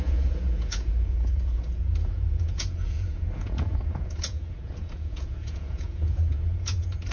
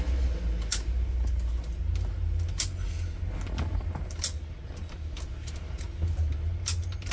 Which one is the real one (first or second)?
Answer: second